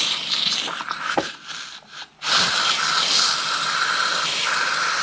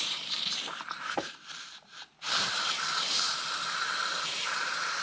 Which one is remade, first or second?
second